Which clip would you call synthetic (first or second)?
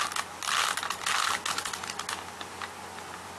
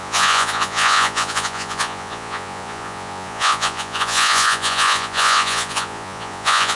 second